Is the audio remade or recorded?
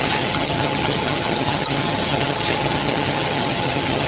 remade